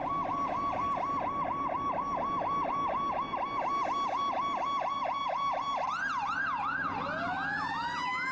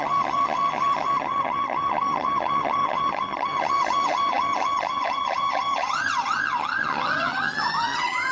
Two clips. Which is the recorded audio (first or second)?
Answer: first